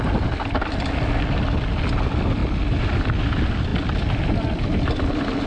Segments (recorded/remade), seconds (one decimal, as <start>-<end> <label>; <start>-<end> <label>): 0.0-2.4 recorded; 2.4-2.9 remade; 2.9-5.5 recorded